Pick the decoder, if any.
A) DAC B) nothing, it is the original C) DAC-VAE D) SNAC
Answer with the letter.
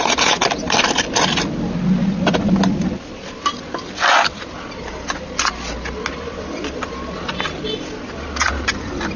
B